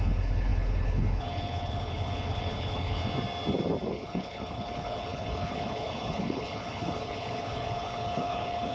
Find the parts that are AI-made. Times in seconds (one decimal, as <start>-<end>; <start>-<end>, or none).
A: 0.0-3.0; 3.9-8.7